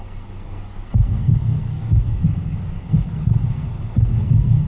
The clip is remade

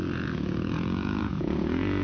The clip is remade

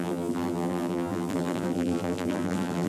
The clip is remade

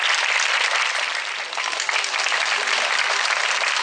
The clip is recorded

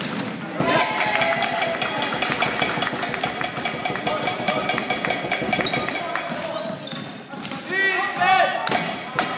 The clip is recorded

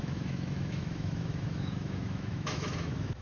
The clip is remade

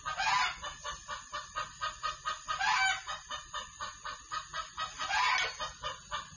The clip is recorded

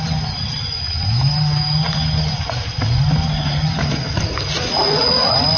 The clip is recorded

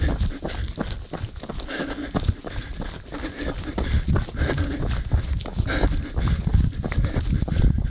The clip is recorded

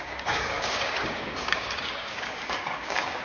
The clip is remade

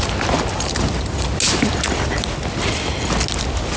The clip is recorded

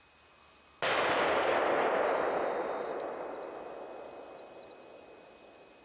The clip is recorded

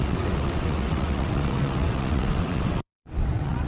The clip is remade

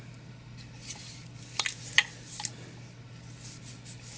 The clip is recorded